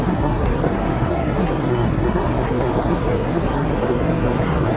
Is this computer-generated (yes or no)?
yes